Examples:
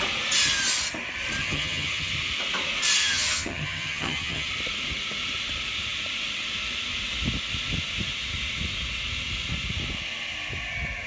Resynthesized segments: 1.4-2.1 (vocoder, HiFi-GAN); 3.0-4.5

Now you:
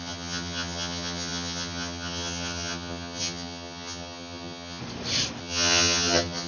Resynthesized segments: 0.0-4.8 (vocoder, HiFi-GAN); 5.4-6.5

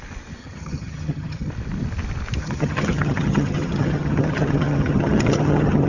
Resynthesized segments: 0.4-1.5 (vocoder, HiFi-GAN); 2.4-5.9

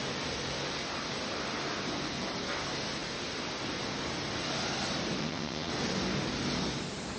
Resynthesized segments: 5.2-5.7 (vocoder, HiFi-GAN)

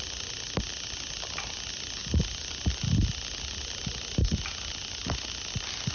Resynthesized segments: none

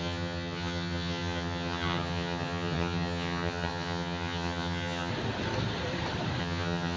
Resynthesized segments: 0.0-5.1 (vocoder, HiFi-GAN); 6.4-7.0

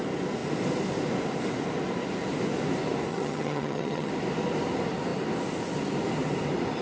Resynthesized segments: 3.1-4.1 (vocoder, HiFi-GAN)

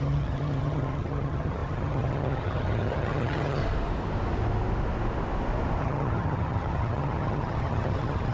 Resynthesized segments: 0.0-3.6 (vocoder, HiFi-GAN); 5.8-8.3